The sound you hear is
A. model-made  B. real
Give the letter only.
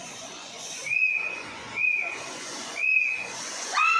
A